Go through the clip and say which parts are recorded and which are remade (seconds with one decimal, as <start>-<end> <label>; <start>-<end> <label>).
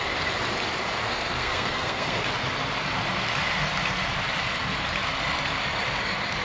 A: 0.0-1.0 recorded; 1.0-2.2 remade; 2.2-6.4 recorded